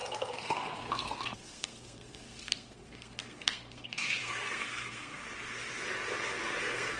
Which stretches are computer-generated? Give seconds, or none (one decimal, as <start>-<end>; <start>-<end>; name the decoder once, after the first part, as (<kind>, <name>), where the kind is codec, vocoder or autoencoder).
0.0-5.2 (codec, SNAC); 6.6-7.0